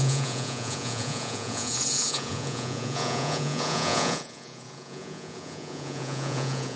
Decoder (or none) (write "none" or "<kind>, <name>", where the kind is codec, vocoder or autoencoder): vocoder, Vocos